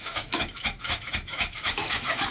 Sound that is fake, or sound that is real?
fake